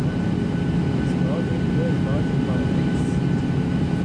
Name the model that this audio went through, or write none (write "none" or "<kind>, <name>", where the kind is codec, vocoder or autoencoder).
none